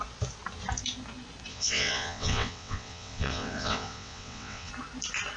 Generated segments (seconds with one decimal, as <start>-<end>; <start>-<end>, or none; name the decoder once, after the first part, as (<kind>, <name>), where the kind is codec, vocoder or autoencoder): 1.5-4.7 (vocoder, WaveNeXt)